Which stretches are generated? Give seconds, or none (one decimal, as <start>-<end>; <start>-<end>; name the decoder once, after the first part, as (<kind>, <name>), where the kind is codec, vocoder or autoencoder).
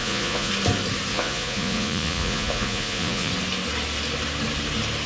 0.0-0.5 (vocoder, Vocos); 1.1-3.3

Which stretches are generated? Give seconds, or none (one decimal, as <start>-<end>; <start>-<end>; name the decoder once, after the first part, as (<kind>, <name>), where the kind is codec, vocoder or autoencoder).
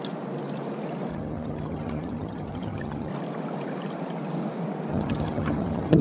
1.1-3.1 (vocoder, HiFi-GAN); 4.9-6.0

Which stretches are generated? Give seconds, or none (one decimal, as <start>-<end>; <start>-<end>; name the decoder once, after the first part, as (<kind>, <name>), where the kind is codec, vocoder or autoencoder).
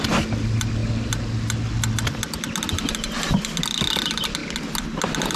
none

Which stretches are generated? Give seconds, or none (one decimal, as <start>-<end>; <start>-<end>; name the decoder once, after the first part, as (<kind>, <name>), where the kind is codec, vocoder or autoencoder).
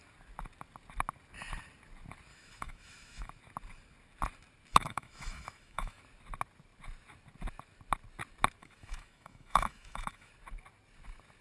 2.3-3.3 (autoencoder, DAC-VAE); 4.7-6.0; 8.6-10.3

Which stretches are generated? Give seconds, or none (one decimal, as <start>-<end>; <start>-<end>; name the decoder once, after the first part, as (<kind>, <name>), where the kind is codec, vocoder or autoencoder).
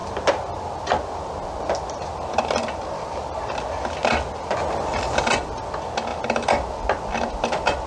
none